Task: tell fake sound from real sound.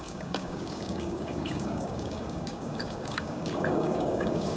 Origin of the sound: fake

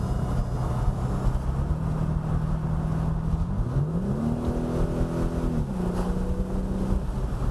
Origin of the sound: real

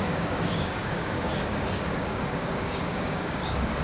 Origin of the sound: fake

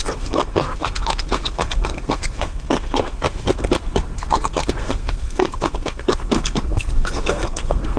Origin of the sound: fake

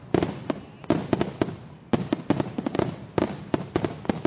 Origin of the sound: real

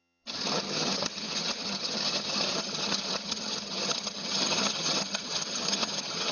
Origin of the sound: fake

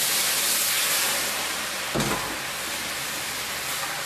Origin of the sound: real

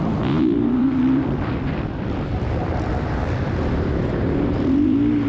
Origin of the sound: fake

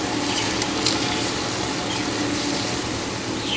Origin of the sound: real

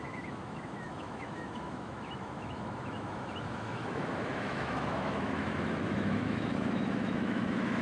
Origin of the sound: fake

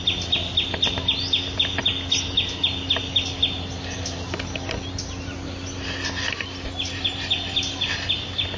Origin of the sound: real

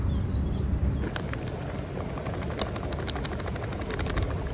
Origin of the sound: real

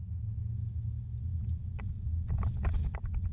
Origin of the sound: real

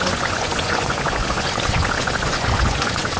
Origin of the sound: fake